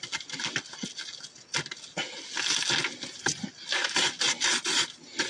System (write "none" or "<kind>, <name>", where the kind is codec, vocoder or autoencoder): none